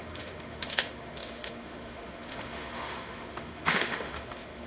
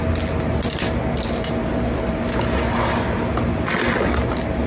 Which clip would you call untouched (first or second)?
second